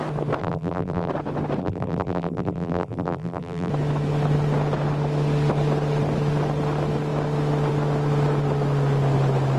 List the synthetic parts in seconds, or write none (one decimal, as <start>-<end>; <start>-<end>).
0.4-1.1; 1.6-3.7